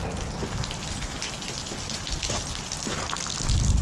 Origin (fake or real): real